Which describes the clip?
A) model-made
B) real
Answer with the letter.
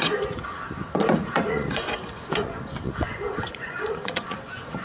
A